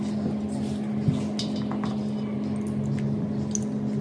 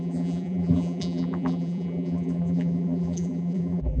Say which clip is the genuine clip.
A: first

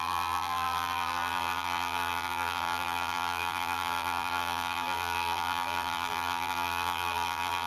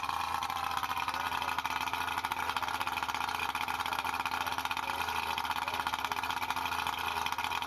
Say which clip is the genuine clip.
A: second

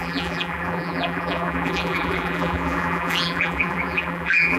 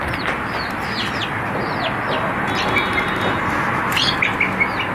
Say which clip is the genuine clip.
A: second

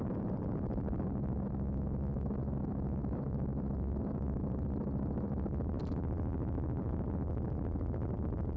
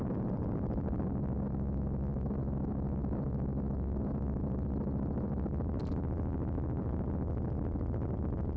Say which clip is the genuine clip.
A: second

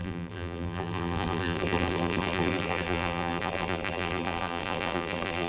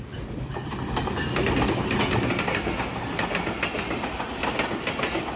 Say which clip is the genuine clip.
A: second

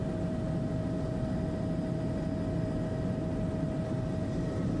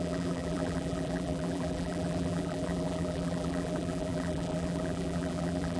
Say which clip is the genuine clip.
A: first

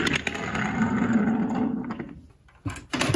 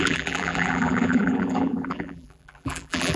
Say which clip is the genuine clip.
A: first